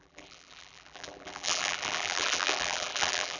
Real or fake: fake